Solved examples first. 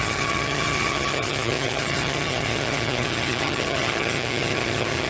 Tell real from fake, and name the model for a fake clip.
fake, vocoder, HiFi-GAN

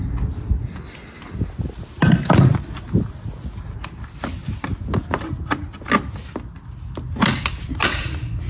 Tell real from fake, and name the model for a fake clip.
real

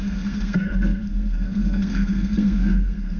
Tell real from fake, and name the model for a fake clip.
fake, codec, SNAC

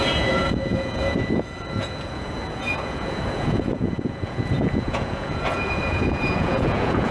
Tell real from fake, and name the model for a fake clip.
fake, vocoder, Vocos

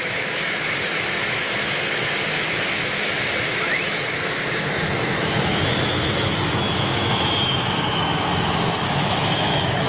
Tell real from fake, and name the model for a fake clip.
fake, autoencoder, DAC-VAE